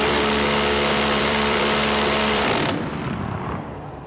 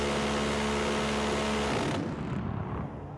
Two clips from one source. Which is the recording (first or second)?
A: second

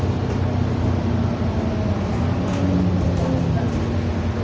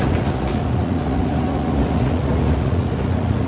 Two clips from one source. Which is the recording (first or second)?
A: first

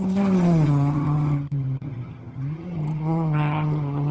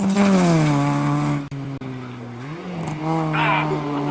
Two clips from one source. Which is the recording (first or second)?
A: second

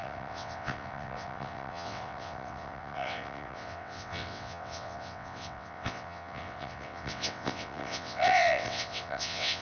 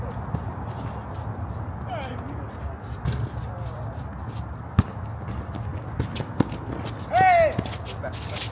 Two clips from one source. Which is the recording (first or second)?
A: second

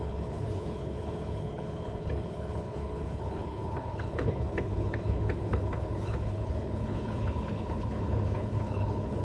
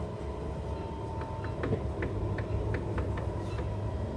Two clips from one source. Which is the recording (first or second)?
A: second